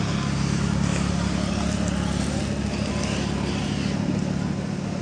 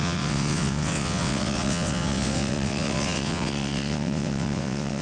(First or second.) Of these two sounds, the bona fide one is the first